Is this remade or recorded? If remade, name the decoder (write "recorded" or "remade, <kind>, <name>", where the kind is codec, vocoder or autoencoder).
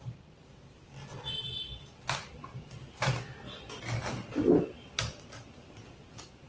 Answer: recorded